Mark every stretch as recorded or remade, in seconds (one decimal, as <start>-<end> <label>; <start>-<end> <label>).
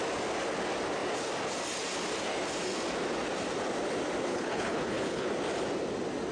0.0-4.3 recorded; 4.3-5.3 remade; 5.3-6.3 recorded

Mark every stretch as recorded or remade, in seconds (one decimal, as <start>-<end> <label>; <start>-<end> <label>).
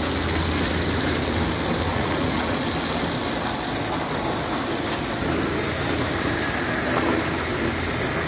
0.0-1.9 recorded; 1.9-2.6 remade; 2.6-8.3 recorded